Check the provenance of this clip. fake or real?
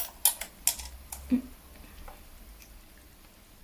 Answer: real